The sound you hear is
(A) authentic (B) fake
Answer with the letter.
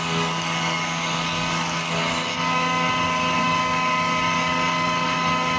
B